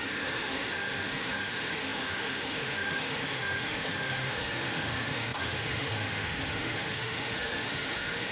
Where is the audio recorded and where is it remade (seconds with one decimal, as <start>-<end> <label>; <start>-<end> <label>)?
0.0-8.3 remade